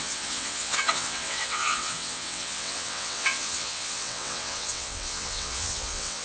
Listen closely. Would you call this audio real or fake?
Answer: fake